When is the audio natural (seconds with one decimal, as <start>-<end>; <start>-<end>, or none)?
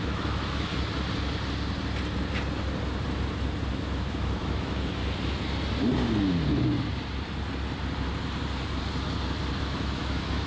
0.7-3.7; 5.0-9.6